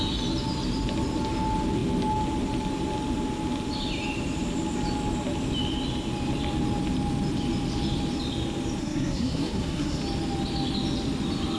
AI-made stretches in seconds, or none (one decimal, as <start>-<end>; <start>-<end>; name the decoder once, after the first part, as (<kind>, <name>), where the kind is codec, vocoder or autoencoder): 8.8-10.0 (codec, SNAC)